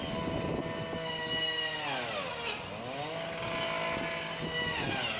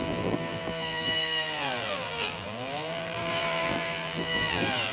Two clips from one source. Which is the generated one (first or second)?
second